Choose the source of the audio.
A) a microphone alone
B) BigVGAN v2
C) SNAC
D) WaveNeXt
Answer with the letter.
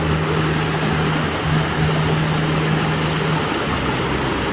A